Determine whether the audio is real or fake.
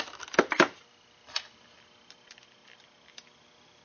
real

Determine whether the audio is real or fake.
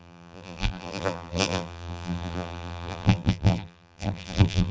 fake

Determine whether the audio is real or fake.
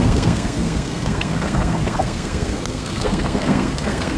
fake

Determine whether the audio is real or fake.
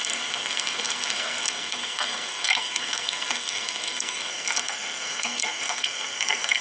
fake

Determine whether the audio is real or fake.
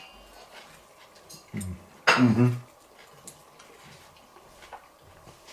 real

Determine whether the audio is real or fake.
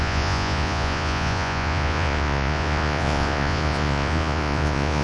fake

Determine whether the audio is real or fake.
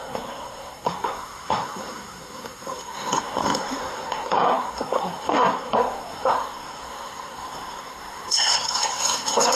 fake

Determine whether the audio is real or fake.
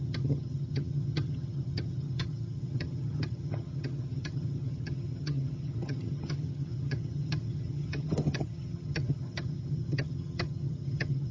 fake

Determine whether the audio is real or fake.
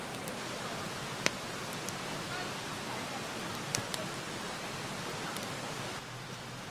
real